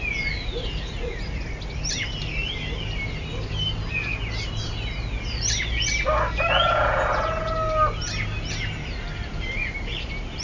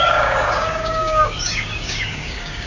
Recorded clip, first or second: first